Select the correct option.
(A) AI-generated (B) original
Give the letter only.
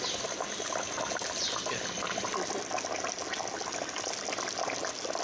B